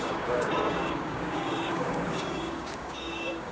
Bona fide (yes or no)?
no